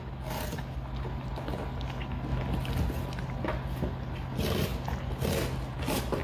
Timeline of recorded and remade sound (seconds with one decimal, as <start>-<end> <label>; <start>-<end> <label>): 0.0-6.2 recorded